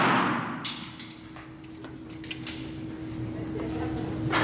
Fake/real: real